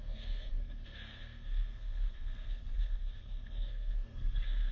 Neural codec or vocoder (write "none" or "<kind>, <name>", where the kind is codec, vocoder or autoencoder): codec, SNAC